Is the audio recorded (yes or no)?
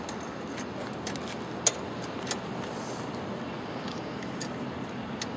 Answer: yes